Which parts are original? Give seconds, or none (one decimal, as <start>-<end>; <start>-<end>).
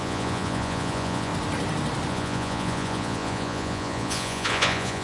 1.3-2.1